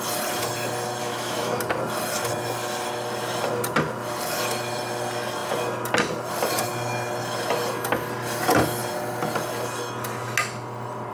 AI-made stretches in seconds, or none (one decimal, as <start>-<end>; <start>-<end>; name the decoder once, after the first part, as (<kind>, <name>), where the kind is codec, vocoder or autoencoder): 1.0-1.6 (autoencoder, DAC-VAE)